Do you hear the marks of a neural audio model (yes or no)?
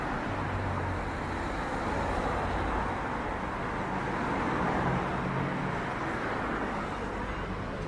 no